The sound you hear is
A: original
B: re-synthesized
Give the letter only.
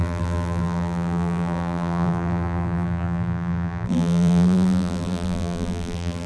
B